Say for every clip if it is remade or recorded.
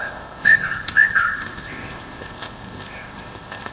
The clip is remade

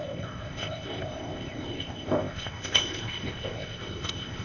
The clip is remade